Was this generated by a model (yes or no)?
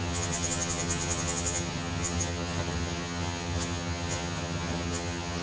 yes